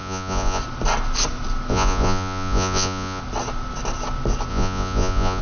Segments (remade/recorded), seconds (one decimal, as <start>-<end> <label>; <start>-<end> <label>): 0.0-0.6 remade; 0.6-1.7 recorded; 1.7-3.2 remade; 3.2-4.5 recorded; 4.5-5.4 remade